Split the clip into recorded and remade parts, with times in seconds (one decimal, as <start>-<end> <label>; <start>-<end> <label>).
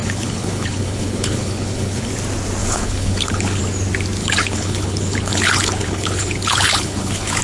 0.0-2.1 remade; 2.1-2.6 recorded; 2.6-3.6 remade; 3.6-4.2 recorded; 4.2-7.4 remade